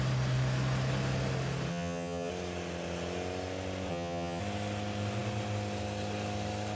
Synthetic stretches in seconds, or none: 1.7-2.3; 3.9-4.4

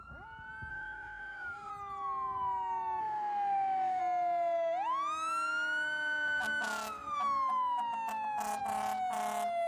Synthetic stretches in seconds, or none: 0.7-1.7; 3.0-4.0

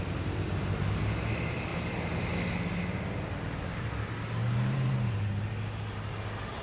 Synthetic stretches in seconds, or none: 1.7-2.3; 4.4-5.5

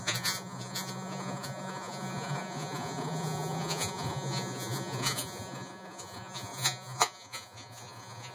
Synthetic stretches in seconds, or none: 0.0-8.3